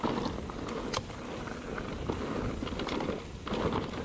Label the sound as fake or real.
real